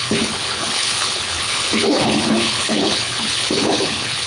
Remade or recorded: remade